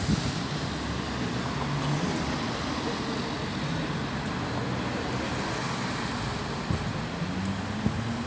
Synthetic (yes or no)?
no